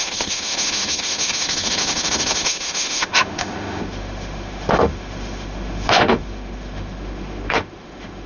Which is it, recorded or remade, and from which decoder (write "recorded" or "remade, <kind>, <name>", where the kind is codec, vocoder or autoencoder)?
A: remade, autoencoder, DAC-VAE